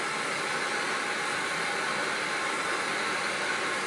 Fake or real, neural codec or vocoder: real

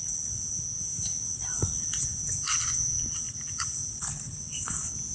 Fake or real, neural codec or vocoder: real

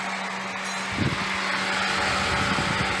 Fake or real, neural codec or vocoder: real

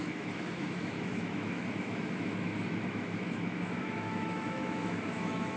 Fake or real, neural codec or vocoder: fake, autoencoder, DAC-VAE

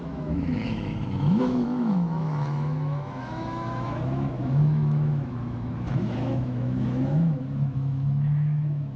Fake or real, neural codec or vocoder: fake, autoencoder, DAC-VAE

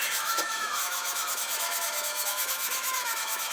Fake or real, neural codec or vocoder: fake, autoencoder, DAC-VAE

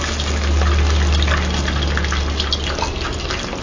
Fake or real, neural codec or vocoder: real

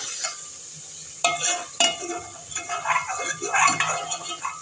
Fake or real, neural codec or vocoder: real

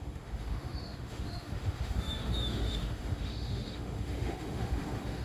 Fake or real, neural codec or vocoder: fake, autoencoder, DAC-VAE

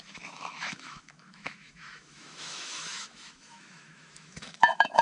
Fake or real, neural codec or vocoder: fake, autoencoder, DAC-VAE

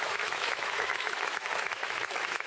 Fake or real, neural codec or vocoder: fake, autoencoder, DAC-VAE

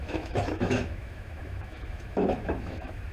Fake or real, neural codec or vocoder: fake, autoencoder, DAC-VAE